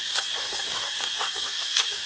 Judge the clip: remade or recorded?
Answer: remade